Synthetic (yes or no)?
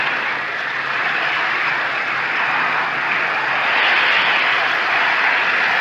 no